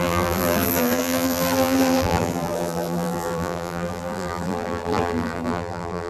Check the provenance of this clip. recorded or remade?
remade